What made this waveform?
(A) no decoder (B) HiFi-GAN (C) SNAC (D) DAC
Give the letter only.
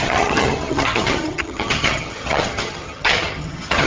B